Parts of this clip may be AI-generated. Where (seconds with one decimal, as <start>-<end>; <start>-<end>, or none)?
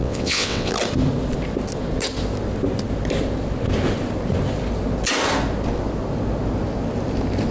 0.0-0.7